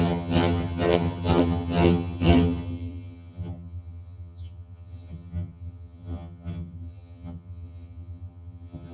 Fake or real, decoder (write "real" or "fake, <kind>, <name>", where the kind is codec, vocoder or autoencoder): fake, vocoder, HiFi-GAN